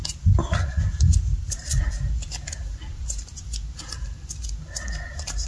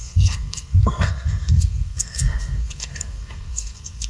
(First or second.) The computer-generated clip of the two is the second